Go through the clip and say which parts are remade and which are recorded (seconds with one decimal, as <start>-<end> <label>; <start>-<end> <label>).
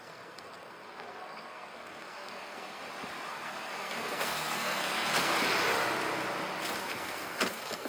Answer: 0.0-2.8 remade; 2.8-3.3 recorded; 3.3-5.3 remade; 5.3-6.8 recorded; 6.8-7.9 remade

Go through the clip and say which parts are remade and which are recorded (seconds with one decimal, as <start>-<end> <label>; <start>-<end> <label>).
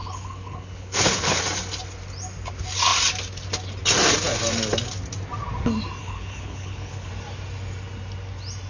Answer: 0.0-1.4 remade; 1.4-6.0 recorded; 6.0-7.1 remade; 7.1-8.7 recorded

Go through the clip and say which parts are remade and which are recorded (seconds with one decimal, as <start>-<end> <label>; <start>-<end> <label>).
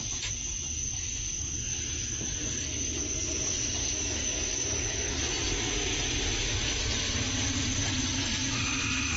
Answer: 0.0-3.8 recorded; 3.8-5.2 remade; 5.2-9.2 recorded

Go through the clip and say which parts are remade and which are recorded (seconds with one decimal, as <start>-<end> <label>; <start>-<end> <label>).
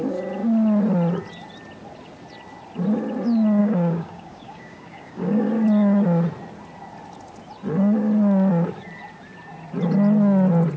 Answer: 0.0-3.6 recorded; 3.6-5.5 remade; 5.5-10.8 recorded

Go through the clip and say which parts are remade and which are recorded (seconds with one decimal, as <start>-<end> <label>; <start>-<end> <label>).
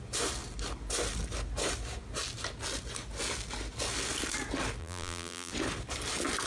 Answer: 0.0-4.8 recorded; 4.8-5.5 remade; 5.5-6.5 recorded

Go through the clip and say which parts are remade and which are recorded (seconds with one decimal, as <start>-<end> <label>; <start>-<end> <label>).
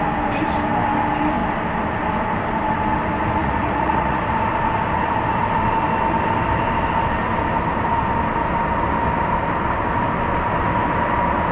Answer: 0.0-3.4 recorded; 3.4-4.2 remade; 4.2-11.5 recorded